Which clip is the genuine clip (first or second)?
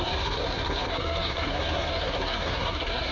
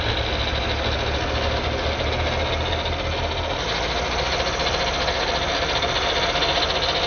second